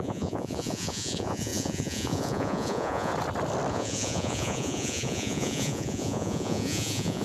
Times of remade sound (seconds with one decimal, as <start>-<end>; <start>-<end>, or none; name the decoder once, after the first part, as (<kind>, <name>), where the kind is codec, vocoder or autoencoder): 0.0-3.1 (vocoder, Vocos); 3.7-7.2